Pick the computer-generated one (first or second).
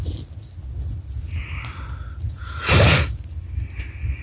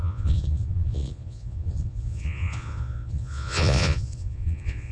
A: second